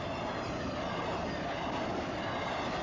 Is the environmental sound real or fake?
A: real